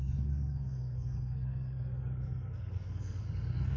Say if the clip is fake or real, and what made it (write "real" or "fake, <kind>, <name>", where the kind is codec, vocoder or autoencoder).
fake, codec, SNAC